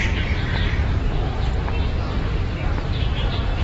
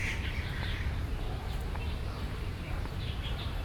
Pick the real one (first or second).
first